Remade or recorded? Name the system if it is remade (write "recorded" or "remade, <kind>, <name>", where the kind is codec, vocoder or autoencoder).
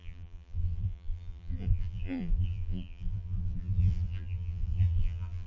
remade, vocoder, BigVGAN v2